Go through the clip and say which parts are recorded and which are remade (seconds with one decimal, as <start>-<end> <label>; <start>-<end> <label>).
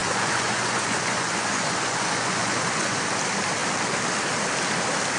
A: 0.0-3.0 remade; 3.0-5.2 recorded